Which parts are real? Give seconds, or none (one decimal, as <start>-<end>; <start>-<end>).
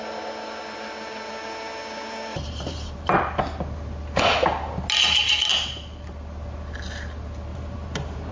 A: 0.0-2.3; 3.4-7.5